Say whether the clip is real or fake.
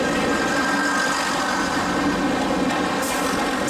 real